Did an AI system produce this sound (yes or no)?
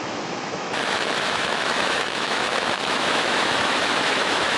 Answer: yes